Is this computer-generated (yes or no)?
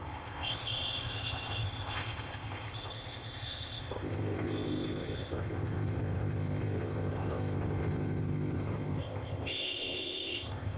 yes